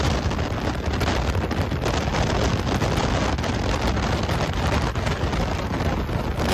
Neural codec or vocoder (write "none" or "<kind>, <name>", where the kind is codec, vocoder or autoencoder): none